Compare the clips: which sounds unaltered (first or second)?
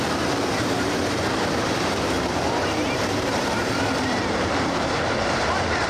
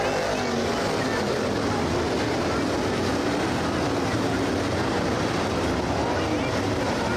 second